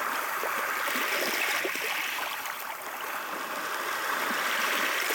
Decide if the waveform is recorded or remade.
remade